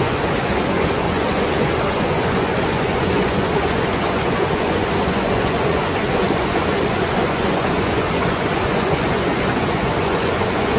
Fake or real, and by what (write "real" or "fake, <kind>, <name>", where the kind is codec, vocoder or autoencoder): fake, vocoder, Vocos